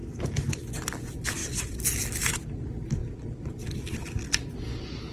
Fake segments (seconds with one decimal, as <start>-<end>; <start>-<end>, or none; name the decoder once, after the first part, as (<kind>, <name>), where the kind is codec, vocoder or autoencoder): 0.0-0.5 (vocoder, BigVGAN v2); 3.0-4.1